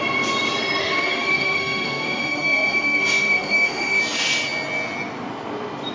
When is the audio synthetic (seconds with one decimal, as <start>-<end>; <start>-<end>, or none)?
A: 0.8-4.0